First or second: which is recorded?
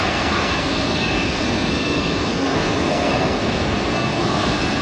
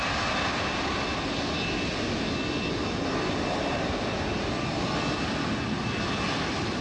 second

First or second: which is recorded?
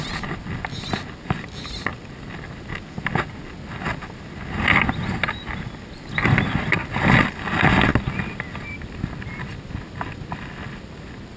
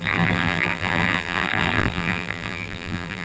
first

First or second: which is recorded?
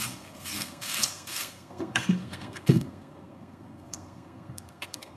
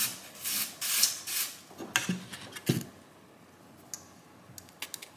second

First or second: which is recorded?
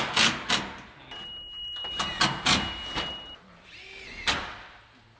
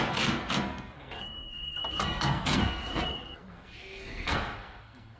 first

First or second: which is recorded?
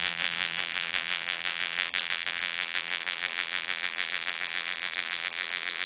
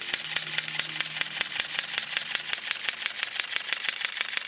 second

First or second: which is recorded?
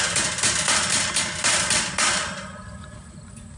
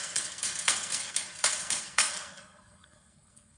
first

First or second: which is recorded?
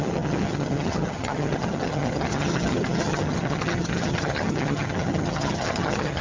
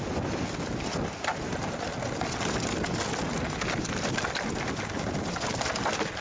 second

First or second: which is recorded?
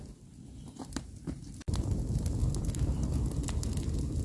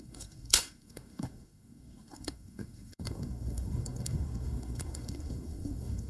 first